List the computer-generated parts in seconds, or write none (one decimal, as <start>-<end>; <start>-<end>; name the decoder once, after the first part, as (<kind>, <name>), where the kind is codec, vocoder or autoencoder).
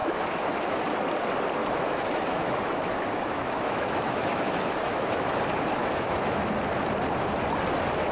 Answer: 0.0-0.8 (autoencoder, DAC-VAE); 1.6-5.3; 5.8-6.5